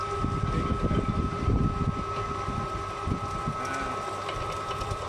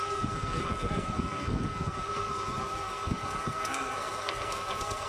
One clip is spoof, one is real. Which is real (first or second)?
first